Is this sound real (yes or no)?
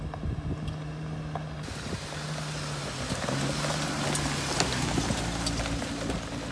yes